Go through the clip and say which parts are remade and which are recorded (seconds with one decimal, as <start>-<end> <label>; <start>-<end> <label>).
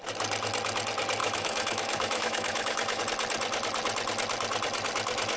0.0-1.2 recorded; 1.2-3.0 remade; 3.0-5.4 recorded